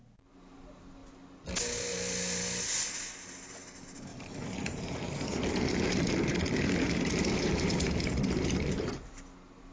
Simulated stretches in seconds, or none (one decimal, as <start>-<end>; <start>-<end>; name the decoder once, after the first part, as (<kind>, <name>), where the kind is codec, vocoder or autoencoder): 4.1-9.1 (vocoder, BigVGAN v2)